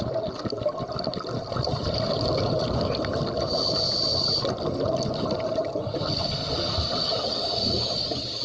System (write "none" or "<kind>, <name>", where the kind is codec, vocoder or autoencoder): none